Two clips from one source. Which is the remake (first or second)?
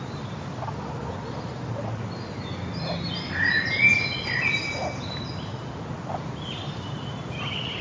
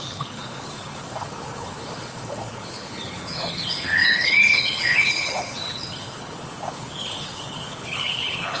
second